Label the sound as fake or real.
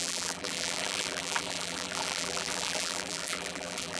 fake